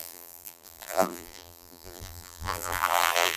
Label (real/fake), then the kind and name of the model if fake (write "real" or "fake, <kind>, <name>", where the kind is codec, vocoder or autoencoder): fake, vocoder, BigVGAN v2